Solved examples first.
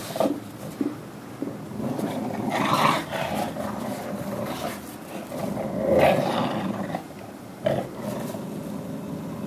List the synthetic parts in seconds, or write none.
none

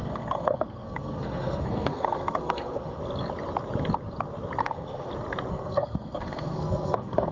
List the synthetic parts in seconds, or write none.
0.0-3.0; 4.6-5.1; 5.5-7.3

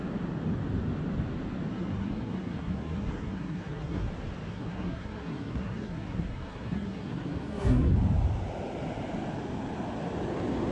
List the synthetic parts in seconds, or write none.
1.7-4.1; 4.5-7.9

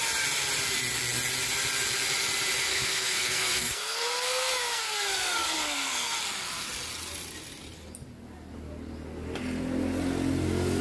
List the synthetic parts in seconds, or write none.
2.7-6.2